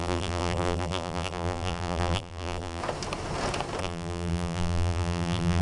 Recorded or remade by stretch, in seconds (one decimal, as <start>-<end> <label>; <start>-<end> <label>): 0.0-2.8 remade; 2.8-3.8 recorded; 3.8-5.6 remade